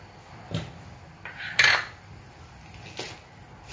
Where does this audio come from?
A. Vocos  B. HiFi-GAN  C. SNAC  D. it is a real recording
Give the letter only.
D